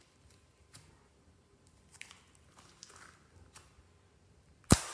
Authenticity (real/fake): real